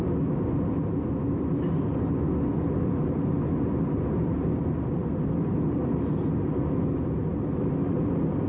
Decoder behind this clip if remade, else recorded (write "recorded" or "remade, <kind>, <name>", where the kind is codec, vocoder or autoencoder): recorded